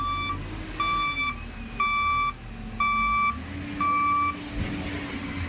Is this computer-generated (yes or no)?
no